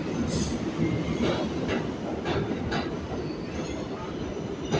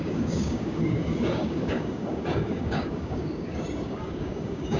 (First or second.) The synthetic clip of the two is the second